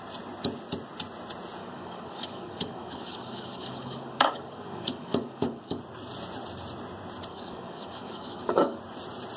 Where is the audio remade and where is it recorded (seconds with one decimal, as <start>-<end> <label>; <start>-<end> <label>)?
0.0-1.6 recorded; 1.6-5.8 remade; 5.8-7.3 recorded; 7.3-8.8 remade; 8.8-9.4 recorded